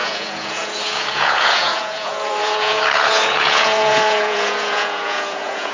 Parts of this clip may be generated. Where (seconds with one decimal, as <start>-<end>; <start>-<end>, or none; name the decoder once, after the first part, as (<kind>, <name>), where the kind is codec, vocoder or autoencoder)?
0.0-5.7 (vocoder, Vocos)